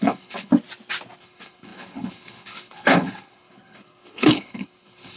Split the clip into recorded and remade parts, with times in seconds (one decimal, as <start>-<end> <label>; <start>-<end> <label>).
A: 0.0-0.5 remade; 0.5-1.2 recorded; 1.2-5.2 remade